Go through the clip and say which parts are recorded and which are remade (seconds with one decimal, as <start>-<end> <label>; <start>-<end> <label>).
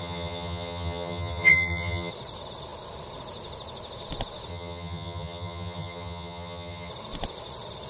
0.0-2.1 remade; 2.1-4.5 recorded; 4.5-6.9 remade; 6.9-7.9 recorded